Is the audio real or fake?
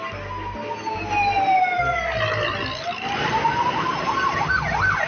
real